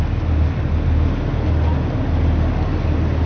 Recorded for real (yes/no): yes